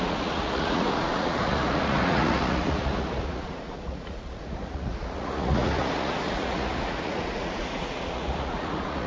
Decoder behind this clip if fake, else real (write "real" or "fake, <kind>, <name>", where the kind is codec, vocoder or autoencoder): fake, vocoder, Vocos